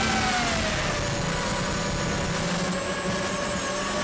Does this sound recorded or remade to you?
recorded